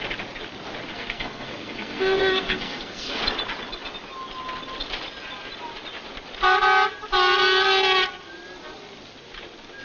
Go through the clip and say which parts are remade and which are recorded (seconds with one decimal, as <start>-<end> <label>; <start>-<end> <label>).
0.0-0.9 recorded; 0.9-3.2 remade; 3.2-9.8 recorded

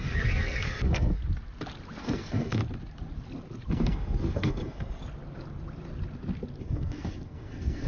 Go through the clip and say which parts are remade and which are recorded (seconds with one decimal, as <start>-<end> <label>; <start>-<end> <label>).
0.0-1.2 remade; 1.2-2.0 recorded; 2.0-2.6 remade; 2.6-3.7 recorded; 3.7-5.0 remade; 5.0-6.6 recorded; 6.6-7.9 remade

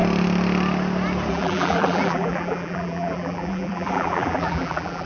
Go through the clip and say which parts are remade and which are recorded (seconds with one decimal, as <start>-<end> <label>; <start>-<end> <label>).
0.0-1.3 recorded; 1.3-5.1 remade